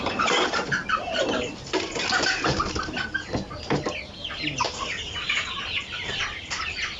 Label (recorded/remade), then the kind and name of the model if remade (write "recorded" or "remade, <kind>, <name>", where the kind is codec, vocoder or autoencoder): recorded